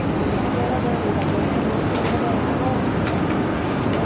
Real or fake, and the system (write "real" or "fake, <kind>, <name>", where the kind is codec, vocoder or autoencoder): real